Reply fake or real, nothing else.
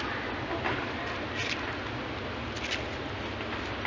real